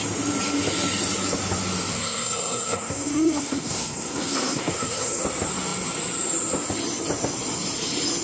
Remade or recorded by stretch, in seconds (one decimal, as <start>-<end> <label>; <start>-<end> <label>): 0.0-1.9 recorded; 1.9-5.2 remade; 5.2-8.2 recorded